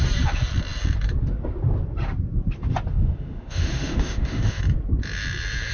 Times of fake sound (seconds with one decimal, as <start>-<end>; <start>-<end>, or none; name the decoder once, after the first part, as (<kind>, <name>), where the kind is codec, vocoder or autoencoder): 2.9-4.6 (autoencoder, DAC-VAE)